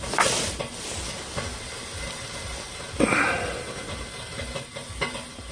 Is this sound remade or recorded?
recorded